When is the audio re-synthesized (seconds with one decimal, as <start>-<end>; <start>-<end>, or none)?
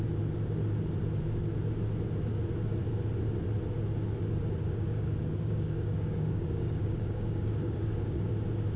4.6-8.3